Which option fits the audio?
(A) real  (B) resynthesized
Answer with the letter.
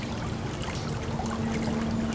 A